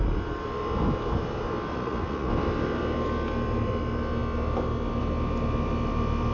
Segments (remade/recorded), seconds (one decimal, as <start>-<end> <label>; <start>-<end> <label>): 0.0-1.7 recorded; 1.7-2.3 remade; 2.3-6.3 recorded